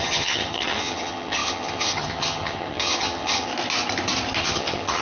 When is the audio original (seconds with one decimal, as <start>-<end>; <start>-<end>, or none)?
3.5-4.4